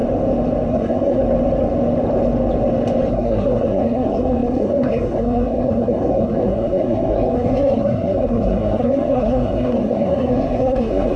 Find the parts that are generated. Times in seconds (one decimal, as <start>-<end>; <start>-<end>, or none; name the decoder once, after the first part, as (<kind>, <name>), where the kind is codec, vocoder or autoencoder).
0.7-1.2 (codec, SNAC); 3.1-11.2